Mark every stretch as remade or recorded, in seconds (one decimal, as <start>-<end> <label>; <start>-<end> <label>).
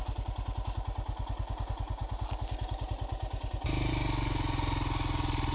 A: 0.0-5.5 recorded